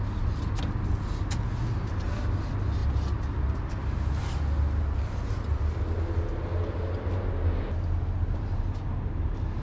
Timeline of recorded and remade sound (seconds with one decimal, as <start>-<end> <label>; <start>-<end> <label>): 0.0-9.6 recorded